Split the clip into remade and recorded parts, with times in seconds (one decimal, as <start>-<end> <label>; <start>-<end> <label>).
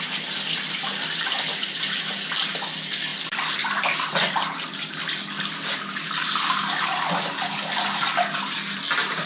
0.0-9.3 recorded